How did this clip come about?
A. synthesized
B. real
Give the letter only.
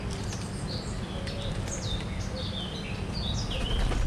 B